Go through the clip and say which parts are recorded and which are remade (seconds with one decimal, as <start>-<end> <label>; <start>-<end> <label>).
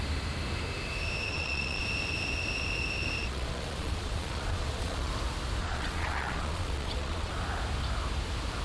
0.0-1.3 recorded; 1.3-1.8 remade; 1.8-3.2 recorded; 3.2-5.1 remade; 5.1-5.6 recorded; 5.6-7.3 remade; 7.3-8.6 recorded